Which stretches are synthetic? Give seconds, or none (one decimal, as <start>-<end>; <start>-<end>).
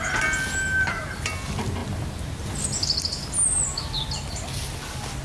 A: none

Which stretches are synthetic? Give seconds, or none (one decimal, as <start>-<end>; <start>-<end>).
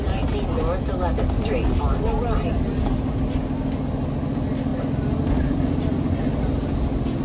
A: none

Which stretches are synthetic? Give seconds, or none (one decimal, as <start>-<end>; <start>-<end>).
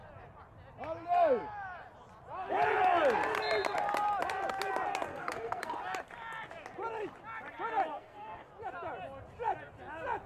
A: 5.1-5.8; 7.9-8.5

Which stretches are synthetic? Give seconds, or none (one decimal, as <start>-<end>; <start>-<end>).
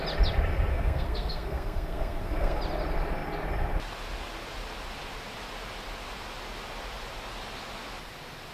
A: 0.7-2.6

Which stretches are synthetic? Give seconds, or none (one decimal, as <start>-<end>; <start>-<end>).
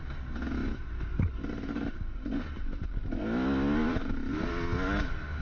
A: 0.6-3.2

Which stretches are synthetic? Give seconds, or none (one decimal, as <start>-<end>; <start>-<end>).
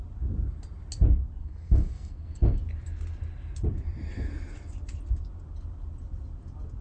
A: 1.4-2.6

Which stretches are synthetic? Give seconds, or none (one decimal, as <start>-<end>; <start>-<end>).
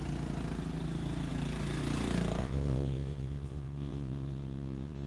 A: 2.4-5.1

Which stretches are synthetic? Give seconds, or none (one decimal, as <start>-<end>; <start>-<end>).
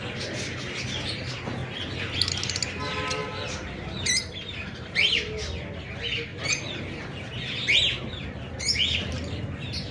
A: 3.2-5.1; 6.3-8.5